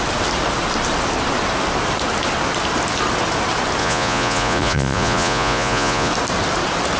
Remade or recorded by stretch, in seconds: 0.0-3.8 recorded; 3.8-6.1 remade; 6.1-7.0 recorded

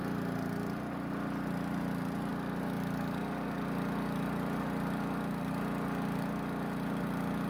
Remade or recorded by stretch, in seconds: 0.0-7.5 recorded

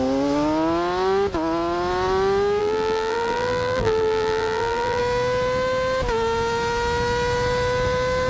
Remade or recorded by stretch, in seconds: 0.0-2.6 recorded; 2.6-5.0 remade; 5.0-8.3 recorded

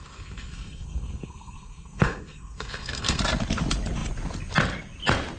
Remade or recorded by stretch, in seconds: 0.0-3.2 remade; 3.2-5.4 recorded

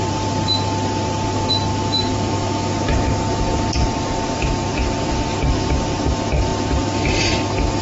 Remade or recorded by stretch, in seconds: 0.0-1.7 recorded; 1.7-2.7 remade; 2.7-7.8 recorded